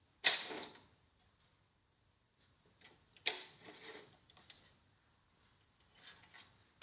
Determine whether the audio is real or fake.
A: real